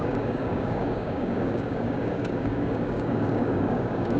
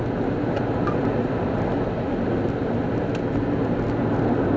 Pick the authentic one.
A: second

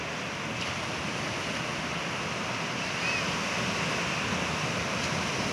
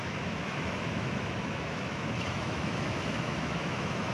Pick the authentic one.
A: first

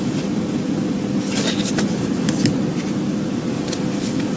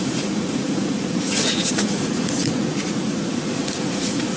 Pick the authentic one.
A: first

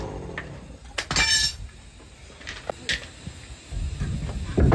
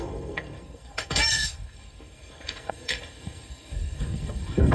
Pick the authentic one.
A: first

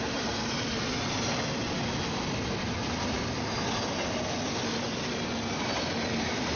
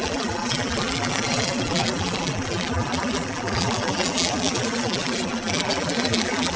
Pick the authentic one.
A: first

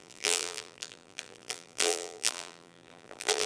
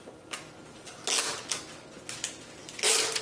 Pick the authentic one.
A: second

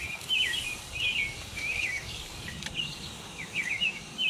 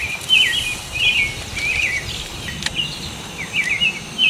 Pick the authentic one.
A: second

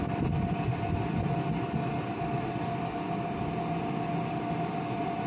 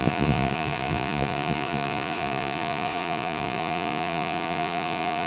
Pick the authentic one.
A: first